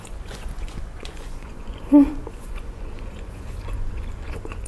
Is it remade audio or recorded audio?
remade